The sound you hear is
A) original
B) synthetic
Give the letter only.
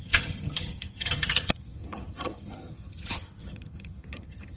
B